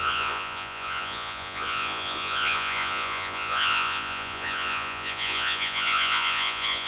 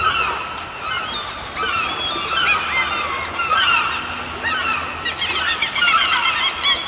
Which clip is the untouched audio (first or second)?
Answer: second